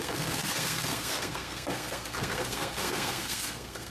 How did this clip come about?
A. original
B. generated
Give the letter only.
B